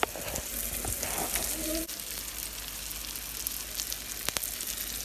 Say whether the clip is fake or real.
real